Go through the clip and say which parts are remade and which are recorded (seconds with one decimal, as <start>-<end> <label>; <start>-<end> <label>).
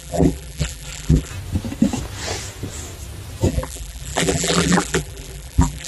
0.0-1.3 remade; 1.3-3.5 recorded; 3.5-5.9 remade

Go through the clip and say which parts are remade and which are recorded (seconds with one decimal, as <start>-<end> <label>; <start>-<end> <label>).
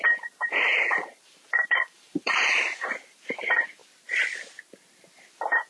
0.0-3.8 remade; 3.8-5.3 recorded; 5.3-5.7 remade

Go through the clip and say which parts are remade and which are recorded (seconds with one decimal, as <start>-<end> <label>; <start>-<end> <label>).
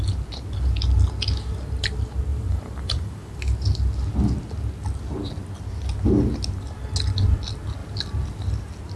0.0-2.3 recorded; 2.3-3.4 remade; 3.4-9.0 recorded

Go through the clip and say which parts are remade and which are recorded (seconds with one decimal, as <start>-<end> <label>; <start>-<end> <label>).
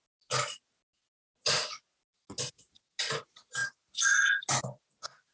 0.0-5.3 recorded